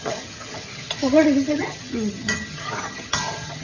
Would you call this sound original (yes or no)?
no